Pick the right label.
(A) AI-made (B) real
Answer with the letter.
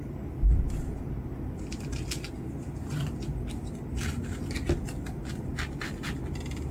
B